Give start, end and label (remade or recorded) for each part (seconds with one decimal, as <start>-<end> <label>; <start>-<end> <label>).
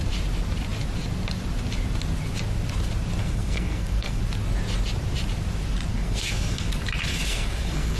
0.0-3.2 recorded; 3.2-4.2 remade; 4.2-5.9 recorded; 5.9-6.6 remade; 6.6-7.1 recorded; 7.1-8.0 remade